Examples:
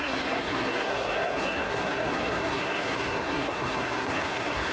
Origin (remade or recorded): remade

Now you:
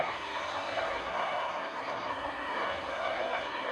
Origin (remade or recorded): remade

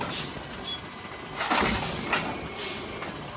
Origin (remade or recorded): recorded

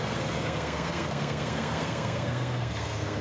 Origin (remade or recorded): remade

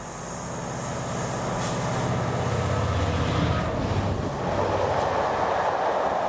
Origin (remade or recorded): recorded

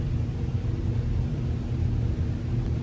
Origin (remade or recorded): recorded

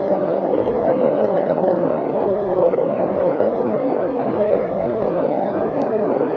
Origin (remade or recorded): remade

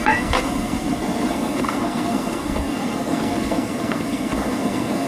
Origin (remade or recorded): remade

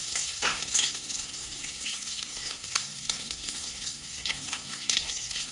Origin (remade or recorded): remade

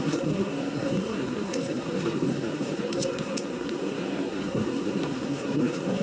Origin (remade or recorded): remade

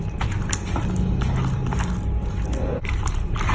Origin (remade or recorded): recorded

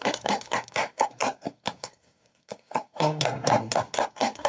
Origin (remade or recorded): remade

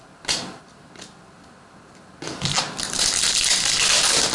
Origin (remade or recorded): recorded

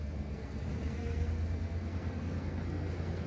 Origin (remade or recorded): remade